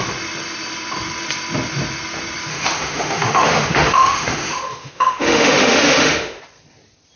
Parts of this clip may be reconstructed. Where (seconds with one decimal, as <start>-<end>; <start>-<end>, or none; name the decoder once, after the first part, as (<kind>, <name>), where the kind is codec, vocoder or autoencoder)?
2.5-6.4 (autoencoder, DAC-VAE)